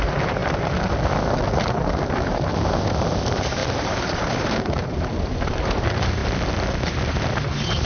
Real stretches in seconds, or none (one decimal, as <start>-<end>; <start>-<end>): 0.4-2.1